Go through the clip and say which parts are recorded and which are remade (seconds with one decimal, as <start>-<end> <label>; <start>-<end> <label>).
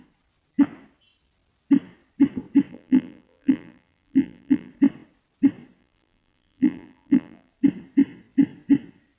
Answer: 0.0-2.7 recorded; 2.7-4.7 remade; 4.7-5.8 recorded; 5.8-7.5 remade; 7.5-9.2 recorded